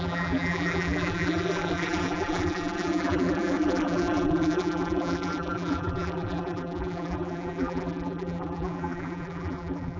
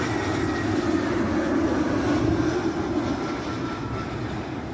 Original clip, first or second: second